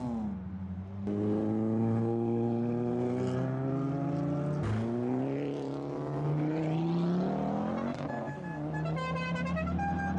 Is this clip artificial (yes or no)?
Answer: no